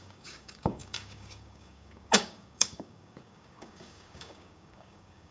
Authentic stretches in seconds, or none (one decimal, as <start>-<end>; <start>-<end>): none